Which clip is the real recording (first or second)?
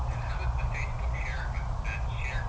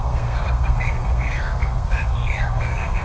first